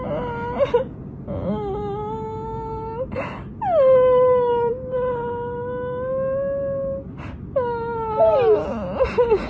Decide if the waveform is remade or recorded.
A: recorded